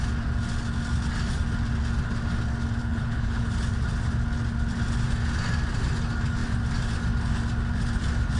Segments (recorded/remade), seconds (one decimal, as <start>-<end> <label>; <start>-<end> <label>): 0.0-2.8 recorded; 2.8-3.5 remade; 3.5-8.4 recorded